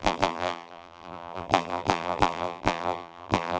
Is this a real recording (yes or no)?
no